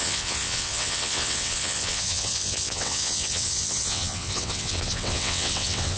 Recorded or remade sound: remade